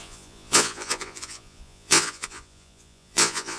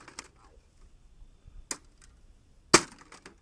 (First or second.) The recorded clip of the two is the second